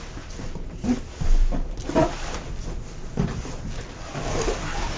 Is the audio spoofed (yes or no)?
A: no